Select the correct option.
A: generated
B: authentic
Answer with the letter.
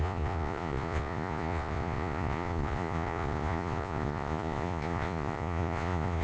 A